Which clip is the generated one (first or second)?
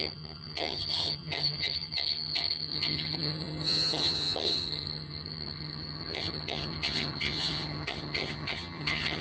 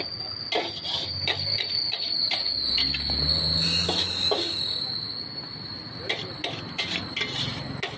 first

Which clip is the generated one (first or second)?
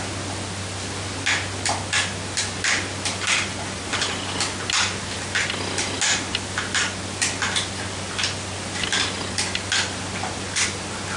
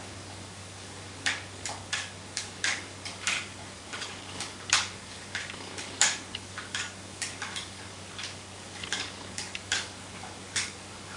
second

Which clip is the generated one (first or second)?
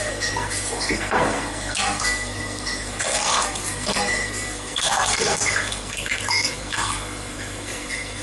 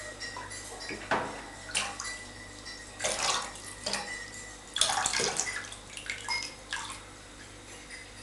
first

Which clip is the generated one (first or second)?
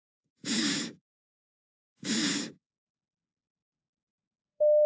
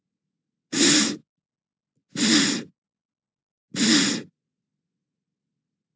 first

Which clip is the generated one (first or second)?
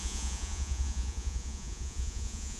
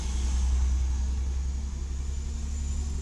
first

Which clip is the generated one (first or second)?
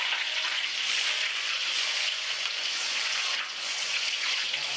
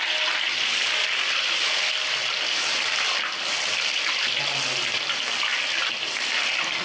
first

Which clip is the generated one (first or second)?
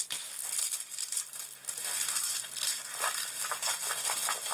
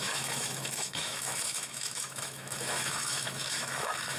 second